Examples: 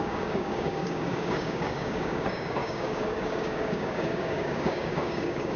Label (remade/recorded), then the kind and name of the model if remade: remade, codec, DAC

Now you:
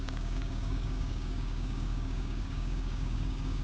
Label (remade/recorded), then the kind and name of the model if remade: remade, codec, DAC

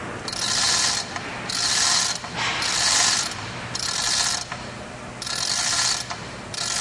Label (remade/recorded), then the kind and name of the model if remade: recorded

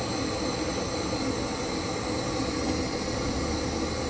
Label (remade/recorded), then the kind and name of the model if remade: recorded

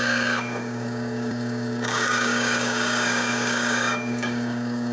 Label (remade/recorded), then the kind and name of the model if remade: remade, codec, DAC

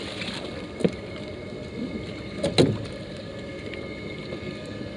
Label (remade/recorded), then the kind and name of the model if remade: recorded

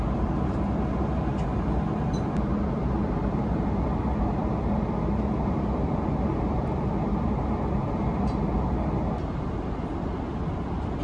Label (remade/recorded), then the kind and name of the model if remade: recorded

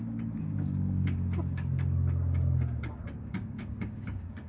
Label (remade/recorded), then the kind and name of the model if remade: remade, codec, DAC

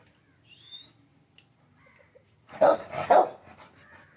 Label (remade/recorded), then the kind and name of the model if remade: recorded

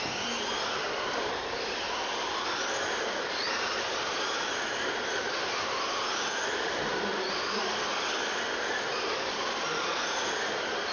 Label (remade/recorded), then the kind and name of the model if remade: recorded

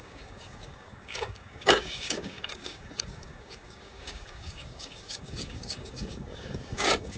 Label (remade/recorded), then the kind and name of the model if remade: remade, codec, DAC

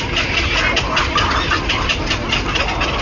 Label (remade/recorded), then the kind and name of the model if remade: recorded